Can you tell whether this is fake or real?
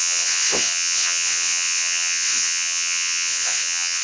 fake